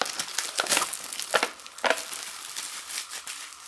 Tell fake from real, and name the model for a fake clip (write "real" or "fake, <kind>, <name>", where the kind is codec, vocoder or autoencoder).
real